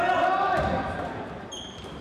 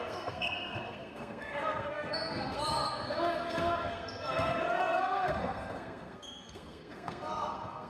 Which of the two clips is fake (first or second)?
second